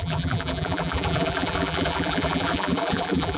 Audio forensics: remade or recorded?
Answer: remade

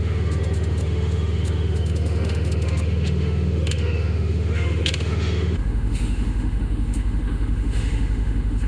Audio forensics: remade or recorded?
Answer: remade